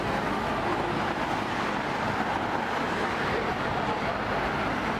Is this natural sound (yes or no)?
yes